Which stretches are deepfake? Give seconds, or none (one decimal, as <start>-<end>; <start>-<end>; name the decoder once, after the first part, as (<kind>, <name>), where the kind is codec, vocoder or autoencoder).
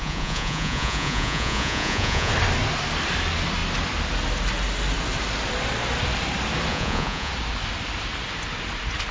0.0-2.3 (vocoder, Vocos); 6.7-7.3